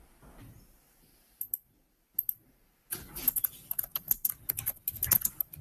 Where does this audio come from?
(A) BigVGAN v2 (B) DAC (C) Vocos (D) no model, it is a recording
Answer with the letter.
D